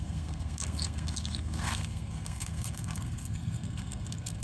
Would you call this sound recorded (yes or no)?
no